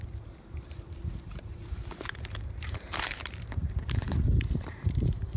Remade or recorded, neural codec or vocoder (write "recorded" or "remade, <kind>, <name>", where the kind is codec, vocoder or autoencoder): remade, vocoder, BigVGAN v2